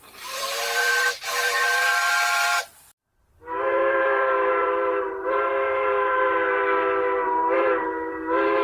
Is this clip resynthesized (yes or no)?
yes